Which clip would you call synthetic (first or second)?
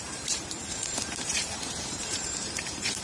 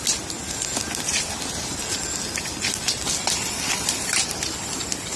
first